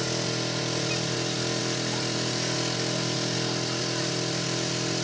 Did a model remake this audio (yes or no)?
no